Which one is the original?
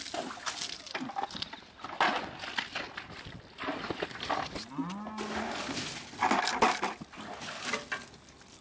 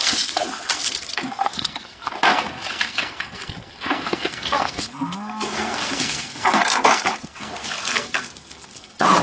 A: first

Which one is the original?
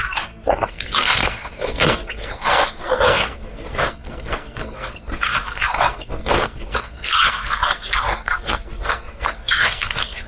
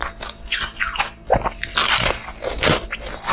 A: second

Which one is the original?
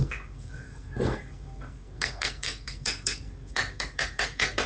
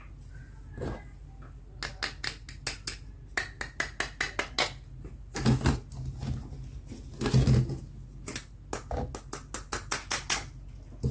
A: second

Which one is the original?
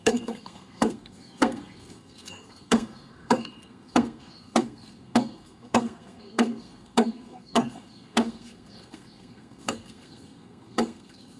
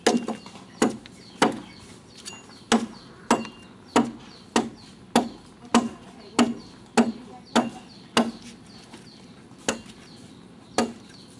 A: second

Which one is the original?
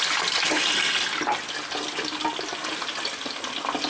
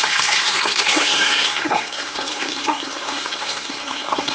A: first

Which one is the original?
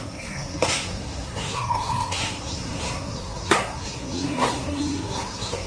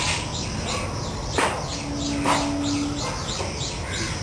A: second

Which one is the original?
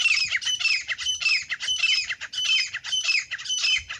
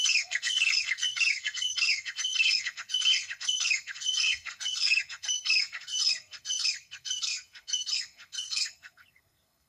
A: first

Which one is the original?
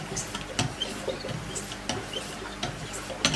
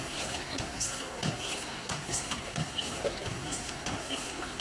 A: first